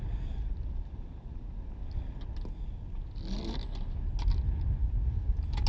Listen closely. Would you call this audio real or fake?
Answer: real